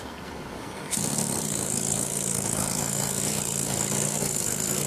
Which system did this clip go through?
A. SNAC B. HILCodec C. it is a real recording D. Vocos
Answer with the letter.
A